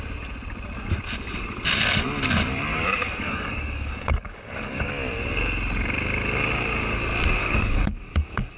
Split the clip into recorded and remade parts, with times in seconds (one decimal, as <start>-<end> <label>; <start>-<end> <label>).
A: 0.0-2.7 recorded; 2.7-4.9 remade; 4.9-7.4 recorded; 7.4-8.6 remade